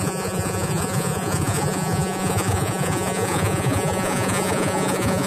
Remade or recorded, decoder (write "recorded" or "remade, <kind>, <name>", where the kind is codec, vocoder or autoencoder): remade, vocoder, Vocos